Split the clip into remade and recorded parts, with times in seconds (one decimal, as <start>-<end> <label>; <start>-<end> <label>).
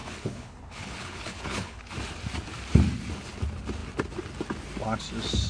0.0-1.8 remade; 1.8-5.5 recorded